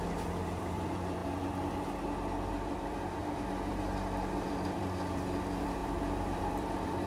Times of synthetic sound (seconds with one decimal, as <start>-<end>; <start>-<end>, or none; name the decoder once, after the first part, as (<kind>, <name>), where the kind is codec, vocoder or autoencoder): 0.0-1.2 (vocoder, BigVGAN v2); 2.5-7.1